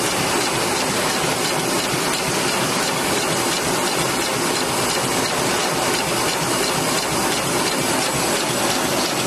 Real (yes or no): yes